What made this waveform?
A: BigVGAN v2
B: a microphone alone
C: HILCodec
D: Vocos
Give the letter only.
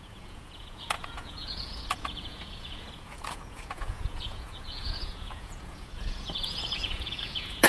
D